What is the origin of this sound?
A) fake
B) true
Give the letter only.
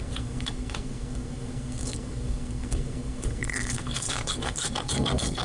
A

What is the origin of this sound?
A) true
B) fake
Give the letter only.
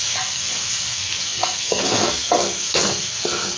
B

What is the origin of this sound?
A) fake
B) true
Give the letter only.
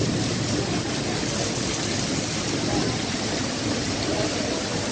B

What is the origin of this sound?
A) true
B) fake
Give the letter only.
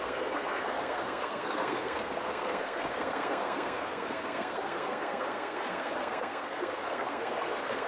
B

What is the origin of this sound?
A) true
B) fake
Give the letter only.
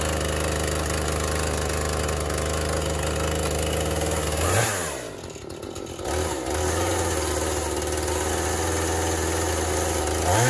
A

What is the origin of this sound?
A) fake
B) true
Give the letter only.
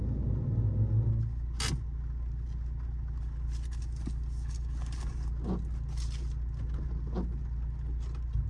B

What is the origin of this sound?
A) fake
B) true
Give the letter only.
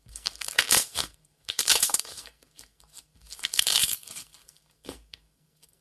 A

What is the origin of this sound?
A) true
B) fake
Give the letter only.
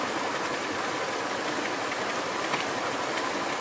A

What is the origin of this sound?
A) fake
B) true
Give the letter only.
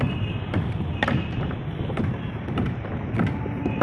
B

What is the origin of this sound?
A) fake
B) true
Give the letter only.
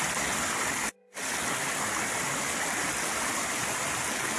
B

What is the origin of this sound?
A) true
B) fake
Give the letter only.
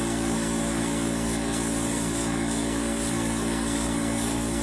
B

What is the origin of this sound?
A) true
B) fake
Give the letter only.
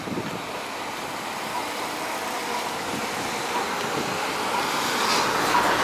A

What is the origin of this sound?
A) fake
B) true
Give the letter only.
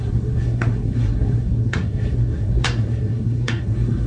A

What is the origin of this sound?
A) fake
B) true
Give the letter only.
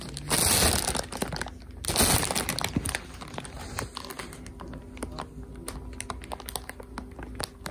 B